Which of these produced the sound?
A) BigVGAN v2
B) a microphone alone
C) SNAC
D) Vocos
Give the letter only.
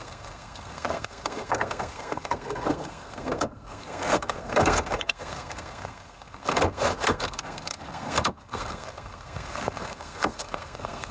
C